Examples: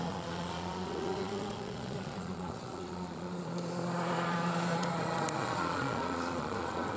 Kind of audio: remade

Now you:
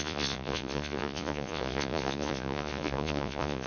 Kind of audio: remade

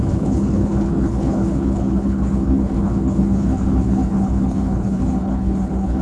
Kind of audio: remade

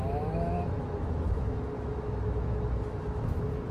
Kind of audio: remade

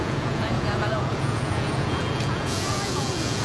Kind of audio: remade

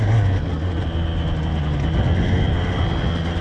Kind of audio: recorded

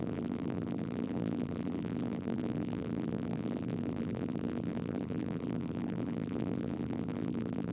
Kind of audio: remade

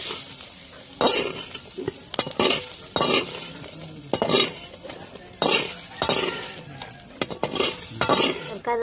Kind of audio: recorded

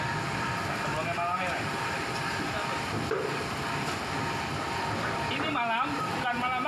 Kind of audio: recorded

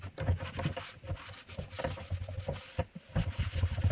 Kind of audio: recorded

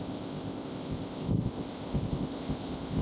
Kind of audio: remade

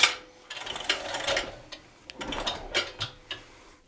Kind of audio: recorded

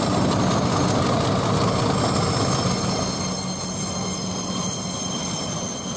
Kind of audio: recorded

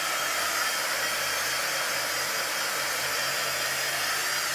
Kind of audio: recorded